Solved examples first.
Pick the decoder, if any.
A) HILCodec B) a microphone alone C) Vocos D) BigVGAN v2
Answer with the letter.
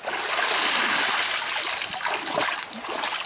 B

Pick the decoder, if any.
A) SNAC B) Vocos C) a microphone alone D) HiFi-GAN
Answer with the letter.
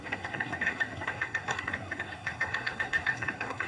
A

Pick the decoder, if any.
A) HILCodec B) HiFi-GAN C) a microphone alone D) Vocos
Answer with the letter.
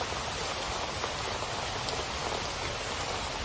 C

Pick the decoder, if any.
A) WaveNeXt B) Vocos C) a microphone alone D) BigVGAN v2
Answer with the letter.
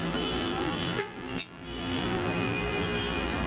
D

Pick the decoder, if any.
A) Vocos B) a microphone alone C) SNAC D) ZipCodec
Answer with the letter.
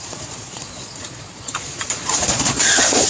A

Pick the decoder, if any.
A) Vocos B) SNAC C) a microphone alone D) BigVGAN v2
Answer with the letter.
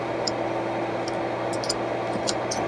C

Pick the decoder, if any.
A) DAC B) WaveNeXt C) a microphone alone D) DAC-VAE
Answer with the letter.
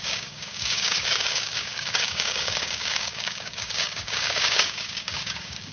A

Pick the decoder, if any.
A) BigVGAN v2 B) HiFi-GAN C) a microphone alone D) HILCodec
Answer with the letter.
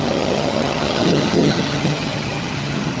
B